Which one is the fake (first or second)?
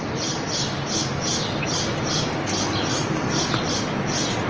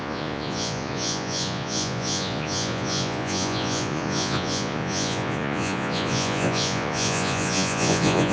second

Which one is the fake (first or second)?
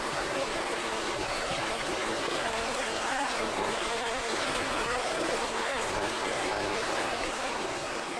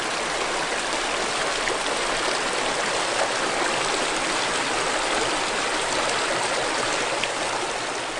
first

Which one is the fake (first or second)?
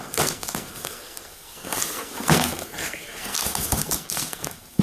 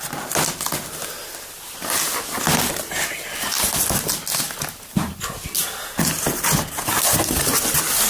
first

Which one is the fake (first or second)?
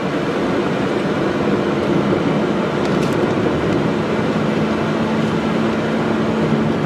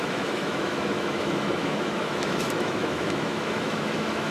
second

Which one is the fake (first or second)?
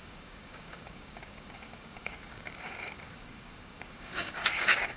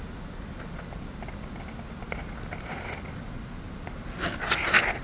first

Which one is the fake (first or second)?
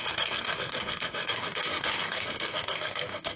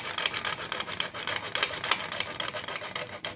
first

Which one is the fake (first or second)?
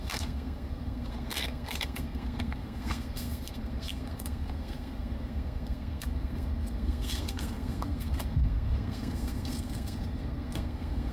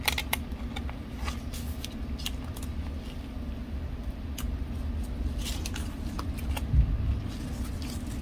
first